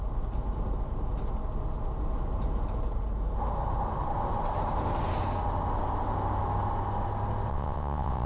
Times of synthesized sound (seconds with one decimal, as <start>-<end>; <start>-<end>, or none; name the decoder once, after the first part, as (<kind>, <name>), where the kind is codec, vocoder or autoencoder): 7.5-8.3 (vocoder, WaveNeXt)